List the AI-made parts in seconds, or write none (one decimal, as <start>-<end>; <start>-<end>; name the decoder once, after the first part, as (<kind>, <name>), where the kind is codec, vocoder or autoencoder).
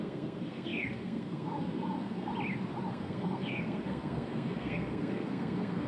0.0-2.3 (codec, SNAC); 2.9-5.9